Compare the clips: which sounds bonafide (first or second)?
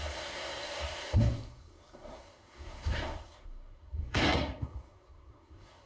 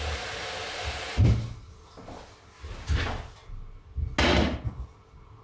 second